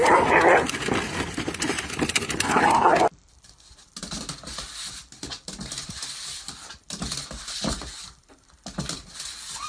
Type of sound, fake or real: fake